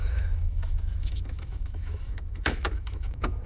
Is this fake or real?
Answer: fake